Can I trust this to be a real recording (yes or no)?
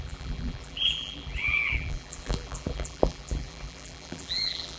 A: no